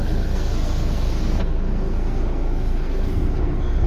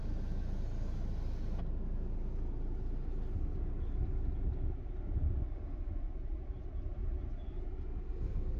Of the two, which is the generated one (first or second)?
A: first